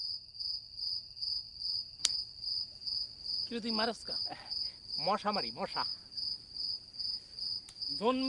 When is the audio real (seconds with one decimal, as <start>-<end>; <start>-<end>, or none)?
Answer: 0.0-8.3